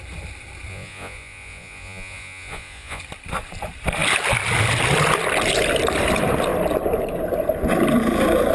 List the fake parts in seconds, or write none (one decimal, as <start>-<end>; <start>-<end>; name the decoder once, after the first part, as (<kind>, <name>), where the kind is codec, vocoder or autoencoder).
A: 0.7-3.0 (vocoder, Vocos)